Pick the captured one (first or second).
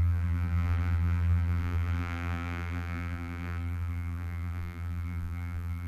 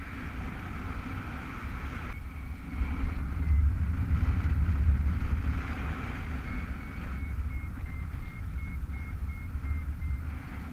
second